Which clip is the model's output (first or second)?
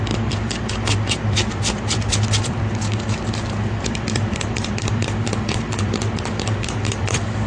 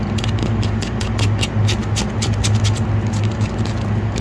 first